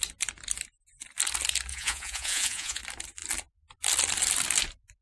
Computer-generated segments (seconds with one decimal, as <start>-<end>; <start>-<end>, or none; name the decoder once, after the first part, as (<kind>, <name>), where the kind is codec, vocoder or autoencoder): 1.7-2.8 (vocoder, Vocos)